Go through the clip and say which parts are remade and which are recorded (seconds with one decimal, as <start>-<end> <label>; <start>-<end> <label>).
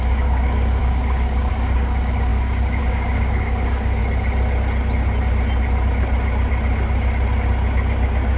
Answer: 0.0-4.0 remade; 4.0-8.4 recorded